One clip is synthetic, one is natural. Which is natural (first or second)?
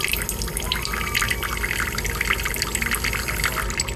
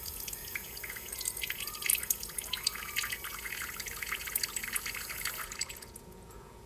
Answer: first